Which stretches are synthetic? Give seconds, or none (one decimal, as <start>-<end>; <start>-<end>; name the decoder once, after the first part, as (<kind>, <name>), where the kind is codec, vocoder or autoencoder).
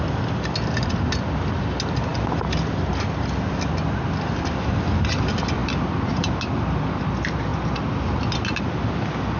none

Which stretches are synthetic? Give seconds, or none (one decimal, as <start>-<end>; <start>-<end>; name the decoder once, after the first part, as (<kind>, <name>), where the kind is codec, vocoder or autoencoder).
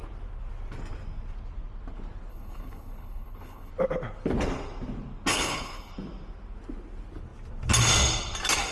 2.3-3.7 (codec, HILCodec); 5.3-5.9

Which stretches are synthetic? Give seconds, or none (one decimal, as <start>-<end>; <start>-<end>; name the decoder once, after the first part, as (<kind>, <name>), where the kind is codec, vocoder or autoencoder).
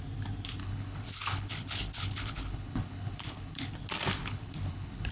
0.6-3.7 (codec, HILCodec); 4.2-5.1